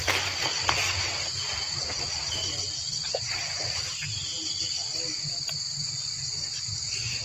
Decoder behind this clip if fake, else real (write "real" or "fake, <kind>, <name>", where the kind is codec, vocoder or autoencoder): real